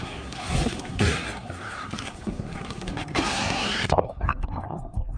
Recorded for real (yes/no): no